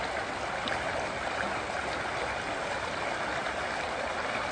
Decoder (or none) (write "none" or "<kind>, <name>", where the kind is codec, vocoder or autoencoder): none